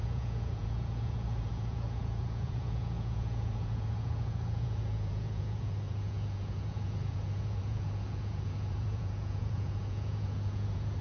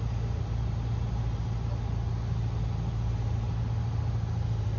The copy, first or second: first